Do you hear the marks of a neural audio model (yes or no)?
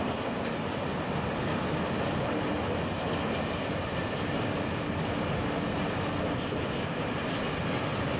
no